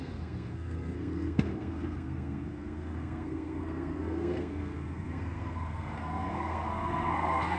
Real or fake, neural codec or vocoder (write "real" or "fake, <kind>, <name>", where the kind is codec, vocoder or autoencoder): fake, codec, SNAC